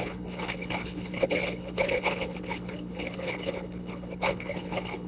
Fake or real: fake